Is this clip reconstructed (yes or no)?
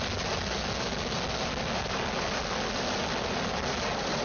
no